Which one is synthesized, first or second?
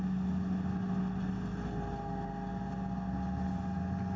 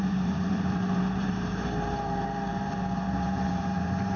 second